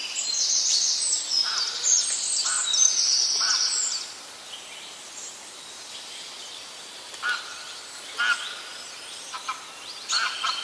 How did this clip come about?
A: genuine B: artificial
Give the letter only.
A